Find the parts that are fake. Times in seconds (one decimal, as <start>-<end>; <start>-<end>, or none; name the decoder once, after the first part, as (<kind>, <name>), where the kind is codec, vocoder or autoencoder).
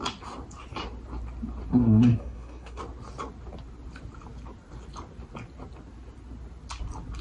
1.7-2.8 (codec, SNAC)